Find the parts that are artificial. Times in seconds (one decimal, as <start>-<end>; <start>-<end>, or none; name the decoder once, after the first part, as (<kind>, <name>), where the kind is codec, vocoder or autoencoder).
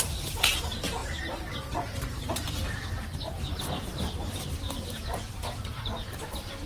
0.0-6.7 (vocoder, BigVGAN v2)